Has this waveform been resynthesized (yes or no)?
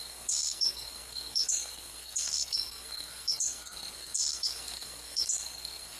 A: yes